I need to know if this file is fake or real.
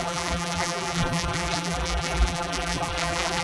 fake